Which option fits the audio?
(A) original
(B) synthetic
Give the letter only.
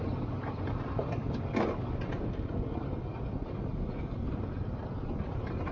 A